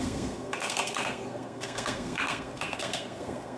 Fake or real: fake